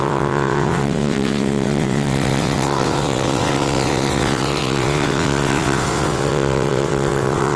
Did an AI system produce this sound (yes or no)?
yes